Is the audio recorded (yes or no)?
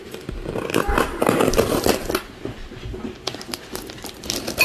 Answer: yes